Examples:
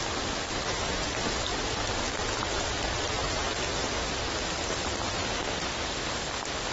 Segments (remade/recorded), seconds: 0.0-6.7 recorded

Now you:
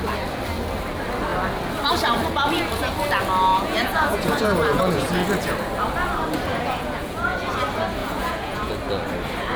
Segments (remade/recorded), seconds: 0.0-3.5 recorded; 3.5-5.1 remade; 5.1-6.5 recorded; 6.5-7.5 remade; 7.5-8.0 recorded; 8.0-8.7 remade; 8.7-9.6 recorded

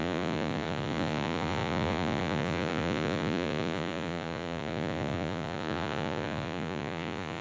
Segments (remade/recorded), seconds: 0.0-7.4 remade

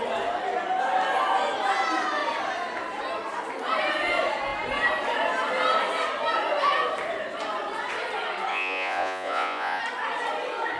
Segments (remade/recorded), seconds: 0.0-8.5 recorded; 8.5-9.8 remade; 9.8-10.8 recorded

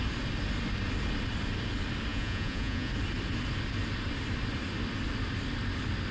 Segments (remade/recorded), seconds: 0.0-2.1 recorded; 2.1-2.9 remade; 2.9-6.1 recorded

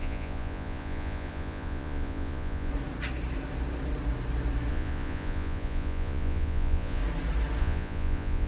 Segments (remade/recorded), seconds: 0.0-2.7 remade; 2.7-4.7 recorded; 4.7-7.0 remade; 7.0-7.6 recorded; 7.6-8.5 remade